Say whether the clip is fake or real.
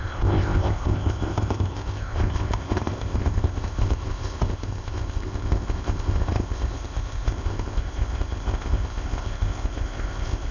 fake